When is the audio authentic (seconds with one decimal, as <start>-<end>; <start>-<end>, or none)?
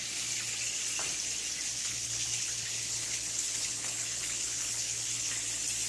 0.0-1.8; 5.3-5.9